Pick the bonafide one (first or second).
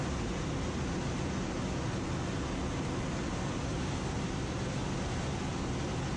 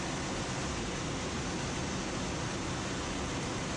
first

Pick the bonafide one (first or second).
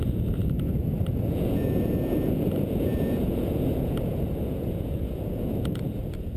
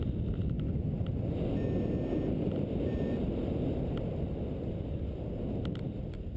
second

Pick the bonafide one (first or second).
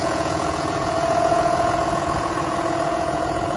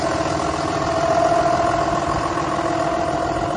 second